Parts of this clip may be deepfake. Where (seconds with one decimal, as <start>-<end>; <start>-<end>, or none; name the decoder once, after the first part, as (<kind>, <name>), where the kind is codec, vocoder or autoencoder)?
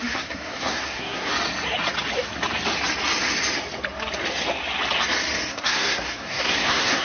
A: 0.0-1.3 (codec, SNAC); 5.5-7.0